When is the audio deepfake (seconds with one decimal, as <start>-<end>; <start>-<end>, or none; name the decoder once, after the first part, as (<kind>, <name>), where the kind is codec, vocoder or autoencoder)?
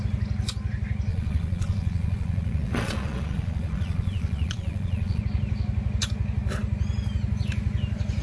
1.1-5.2 (vocoder, Vocos)